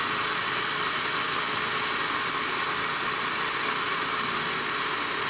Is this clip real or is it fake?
real